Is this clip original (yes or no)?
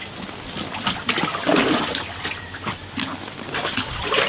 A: yes